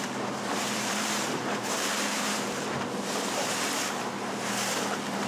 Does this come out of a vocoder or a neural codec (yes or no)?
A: yes